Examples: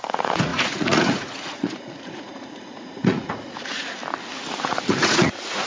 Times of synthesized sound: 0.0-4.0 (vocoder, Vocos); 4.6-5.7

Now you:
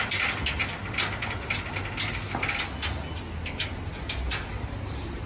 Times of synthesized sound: none